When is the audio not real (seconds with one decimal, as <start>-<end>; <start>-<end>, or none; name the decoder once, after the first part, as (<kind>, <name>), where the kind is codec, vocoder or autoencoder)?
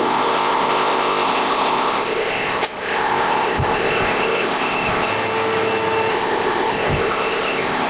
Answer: 0.0-5.1 (codec, ZipCodec); 6.1-7.9